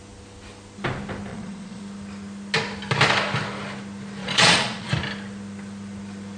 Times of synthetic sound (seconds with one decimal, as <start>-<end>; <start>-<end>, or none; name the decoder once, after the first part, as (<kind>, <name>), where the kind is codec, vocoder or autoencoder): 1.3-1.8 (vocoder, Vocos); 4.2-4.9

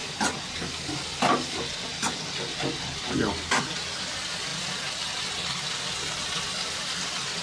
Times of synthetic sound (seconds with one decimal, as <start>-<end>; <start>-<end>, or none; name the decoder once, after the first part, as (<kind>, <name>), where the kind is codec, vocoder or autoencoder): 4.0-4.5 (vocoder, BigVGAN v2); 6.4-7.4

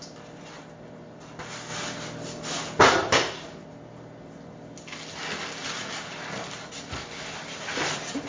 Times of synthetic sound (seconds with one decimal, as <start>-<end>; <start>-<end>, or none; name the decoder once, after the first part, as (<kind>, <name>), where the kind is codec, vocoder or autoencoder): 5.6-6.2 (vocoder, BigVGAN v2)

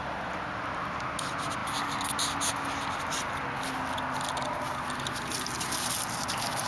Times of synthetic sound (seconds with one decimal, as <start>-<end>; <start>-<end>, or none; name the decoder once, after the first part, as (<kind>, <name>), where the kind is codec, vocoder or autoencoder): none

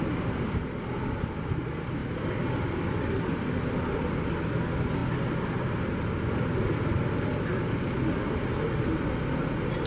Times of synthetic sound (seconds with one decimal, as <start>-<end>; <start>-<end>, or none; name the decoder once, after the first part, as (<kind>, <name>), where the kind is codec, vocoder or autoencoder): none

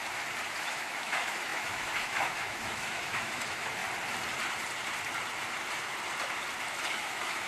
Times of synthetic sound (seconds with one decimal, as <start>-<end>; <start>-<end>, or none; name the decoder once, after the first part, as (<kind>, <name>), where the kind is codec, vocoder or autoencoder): 0.6-3.8 (autoencoder, DAC-VAE); 6.9-7.5

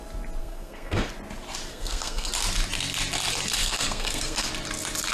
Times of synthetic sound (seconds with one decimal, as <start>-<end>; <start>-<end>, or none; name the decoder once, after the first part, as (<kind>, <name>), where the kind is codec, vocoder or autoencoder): 0.4-1.1 (codec, SNAC); 1.7-2.3; 3.6-4.5